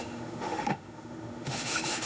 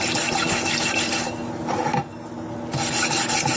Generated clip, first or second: first